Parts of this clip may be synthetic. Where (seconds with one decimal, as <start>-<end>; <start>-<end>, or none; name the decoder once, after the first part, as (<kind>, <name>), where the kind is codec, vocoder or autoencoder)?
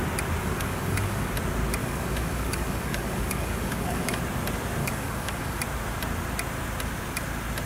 0.4-1.3 (codec, DAC); 1.8-4.2; 4.8-5.6